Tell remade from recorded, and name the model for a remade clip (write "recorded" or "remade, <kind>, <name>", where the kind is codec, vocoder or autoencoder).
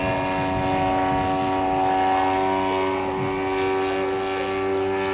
recorded